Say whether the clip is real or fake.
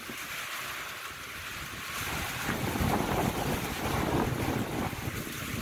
real